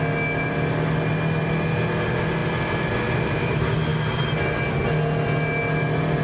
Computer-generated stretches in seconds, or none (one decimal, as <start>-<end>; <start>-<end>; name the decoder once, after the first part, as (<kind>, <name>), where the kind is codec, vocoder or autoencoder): none